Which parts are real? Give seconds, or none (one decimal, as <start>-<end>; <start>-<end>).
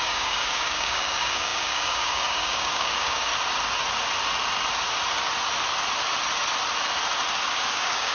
3.3-7.5